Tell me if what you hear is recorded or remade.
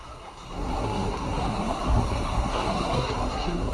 remade